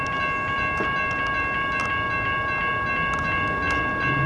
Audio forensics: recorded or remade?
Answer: recorded